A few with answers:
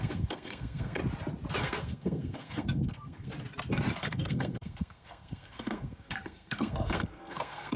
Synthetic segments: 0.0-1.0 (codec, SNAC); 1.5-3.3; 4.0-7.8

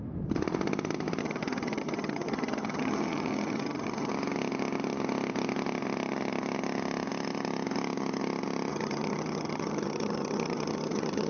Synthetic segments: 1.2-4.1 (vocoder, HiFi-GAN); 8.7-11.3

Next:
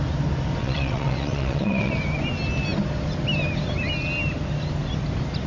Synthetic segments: 0.6-1.9 (vocoder, WaveNeXt)

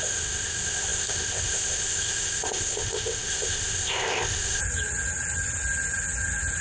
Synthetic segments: 0.0-4.6 (codec, ZipCodec)

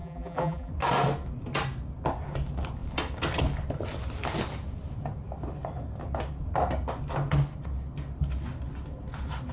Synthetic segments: 0.0-0.7 (vocoder, BigVGAN v2)

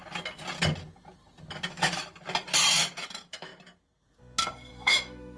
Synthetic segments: 1.7-2.1 (autoencoder, DAC-VAE); 3.1-3.5; 4.7-5.4

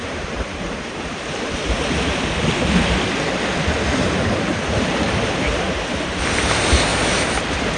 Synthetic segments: 0.0-1.6 (vocoder, BigVGAN v2); 4.0-6.9